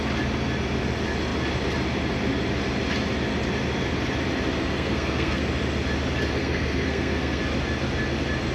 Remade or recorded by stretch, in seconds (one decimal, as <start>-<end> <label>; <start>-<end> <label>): 0.0-4.7 recorded; 4.7-5.4 remade; 5.4-6.4 recorded; 6.4-7.4 remade; 7.4-8.5 recorded